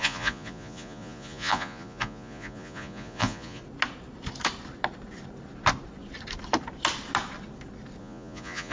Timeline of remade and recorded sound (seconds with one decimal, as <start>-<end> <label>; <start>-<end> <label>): 0.0-3.6 remade; 3.6-8.0 recorded; 8.0-8.7 remade